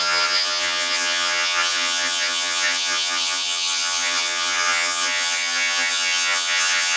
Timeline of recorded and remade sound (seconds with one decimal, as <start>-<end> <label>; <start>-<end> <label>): 0.0-7.0 remade